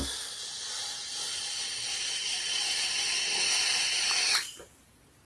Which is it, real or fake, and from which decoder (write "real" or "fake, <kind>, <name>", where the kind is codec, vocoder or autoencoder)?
real